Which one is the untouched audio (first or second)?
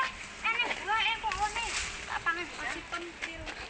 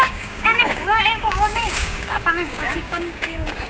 first